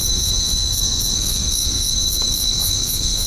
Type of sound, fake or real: fake